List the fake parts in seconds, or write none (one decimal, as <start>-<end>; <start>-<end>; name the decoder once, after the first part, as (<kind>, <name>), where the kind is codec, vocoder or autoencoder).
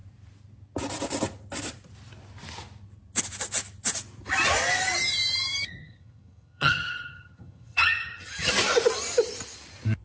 5.8-8.5 (vocoder, HiFi-GAN)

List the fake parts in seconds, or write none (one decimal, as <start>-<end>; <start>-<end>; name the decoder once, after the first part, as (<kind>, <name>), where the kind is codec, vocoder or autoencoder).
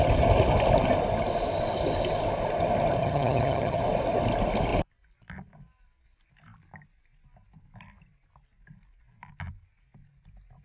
3.0-3.8 (vocoder, HiFi-GAN)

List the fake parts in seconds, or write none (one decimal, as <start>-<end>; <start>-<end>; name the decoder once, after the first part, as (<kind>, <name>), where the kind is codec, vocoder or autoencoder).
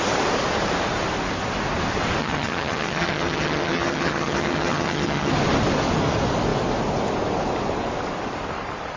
2.2-5.3 (vocoder, HiFi-GAN)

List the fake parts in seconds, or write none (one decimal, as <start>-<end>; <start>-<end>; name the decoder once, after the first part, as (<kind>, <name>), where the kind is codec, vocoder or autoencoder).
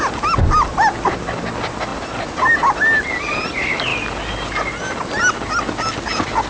none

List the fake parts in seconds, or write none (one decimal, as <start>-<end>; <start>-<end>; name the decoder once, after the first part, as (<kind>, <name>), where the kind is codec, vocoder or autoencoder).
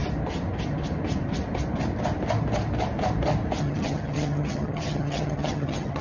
3.6-6.0 (vocoder, HiFi-GAN)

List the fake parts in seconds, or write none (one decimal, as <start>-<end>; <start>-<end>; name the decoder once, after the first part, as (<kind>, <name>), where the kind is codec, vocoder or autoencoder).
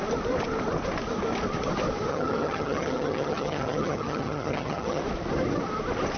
2.1-5.0 (vocoder, HiFi-GAN)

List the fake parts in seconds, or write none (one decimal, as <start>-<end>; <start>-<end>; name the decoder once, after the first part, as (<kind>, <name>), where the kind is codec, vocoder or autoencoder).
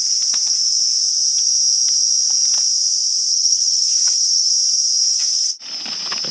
3.3-4.5 (vocoder, HiFi-GAN); 5.1-5.6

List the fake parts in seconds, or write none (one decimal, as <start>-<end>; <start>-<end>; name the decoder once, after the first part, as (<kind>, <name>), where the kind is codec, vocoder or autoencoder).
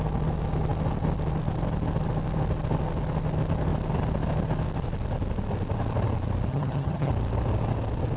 6.5-7.1 (vocoder, HiFi-GAN)